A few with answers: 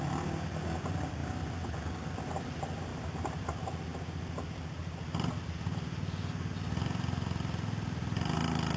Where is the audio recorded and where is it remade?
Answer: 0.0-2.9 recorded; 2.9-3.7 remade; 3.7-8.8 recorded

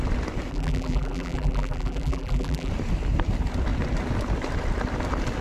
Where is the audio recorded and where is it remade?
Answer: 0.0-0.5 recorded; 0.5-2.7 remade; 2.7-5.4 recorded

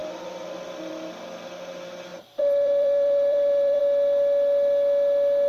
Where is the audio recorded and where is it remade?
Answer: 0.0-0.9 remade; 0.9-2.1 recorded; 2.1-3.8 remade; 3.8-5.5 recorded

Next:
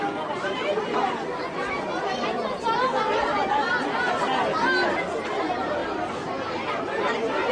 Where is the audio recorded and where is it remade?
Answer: 0.0-5.8 recorded; 5.8-7.0 remade; 7.0-7.5 recorded